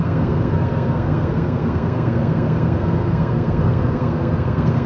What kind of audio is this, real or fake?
fake